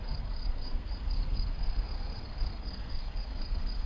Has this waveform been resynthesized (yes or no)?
yes